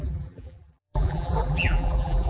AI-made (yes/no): yes